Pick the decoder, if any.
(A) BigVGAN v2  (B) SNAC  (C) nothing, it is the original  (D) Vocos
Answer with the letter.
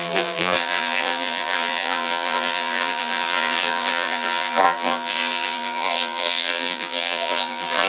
A